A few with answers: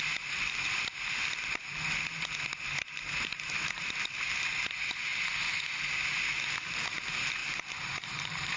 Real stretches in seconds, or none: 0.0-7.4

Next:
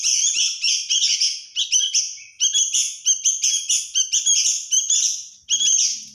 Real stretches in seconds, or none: 0.9-6.1

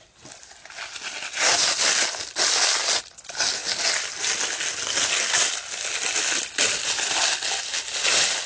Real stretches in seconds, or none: 0.0-8.5

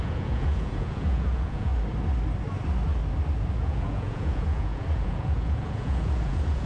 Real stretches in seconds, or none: 1.7-3.5

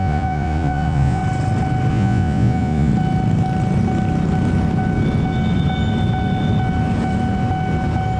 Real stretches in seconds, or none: 1.2-1.9; 2.9-8.2